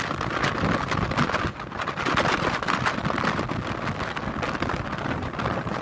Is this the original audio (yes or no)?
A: yes